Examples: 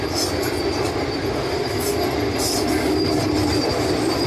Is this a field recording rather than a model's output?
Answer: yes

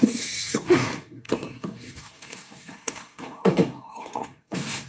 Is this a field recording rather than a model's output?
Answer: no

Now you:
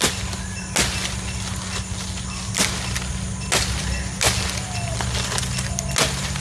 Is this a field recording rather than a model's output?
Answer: yes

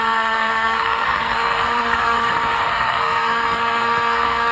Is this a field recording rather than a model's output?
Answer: no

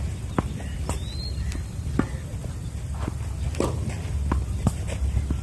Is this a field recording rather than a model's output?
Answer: yes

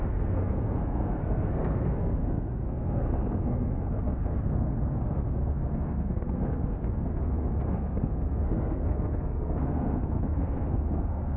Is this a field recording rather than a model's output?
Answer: no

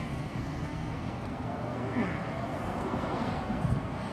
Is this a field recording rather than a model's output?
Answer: no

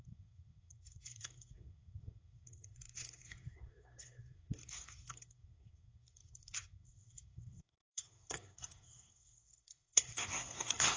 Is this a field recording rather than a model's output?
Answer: no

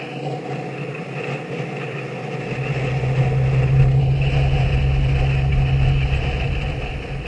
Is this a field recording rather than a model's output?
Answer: yes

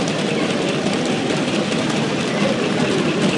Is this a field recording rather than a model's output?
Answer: yes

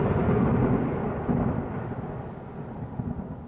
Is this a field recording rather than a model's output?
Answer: yes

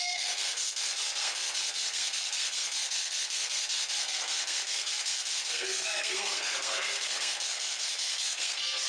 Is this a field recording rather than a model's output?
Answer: no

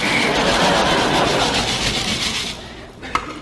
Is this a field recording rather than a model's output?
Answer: yes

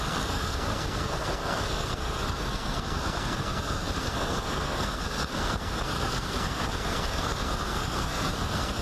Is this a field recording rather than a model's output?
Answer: no